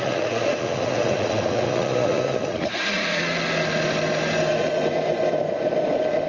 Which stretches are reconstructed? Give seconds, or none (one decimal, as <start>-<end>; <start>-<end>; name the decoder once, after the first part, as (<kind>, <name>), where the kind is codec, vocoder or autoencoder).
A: 0.0-3.3 (vocoder, Vocos)